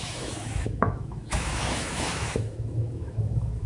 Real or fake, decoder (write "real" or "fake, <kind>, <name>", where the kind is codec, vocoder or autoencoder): fake, autoencoder, DAC-VAE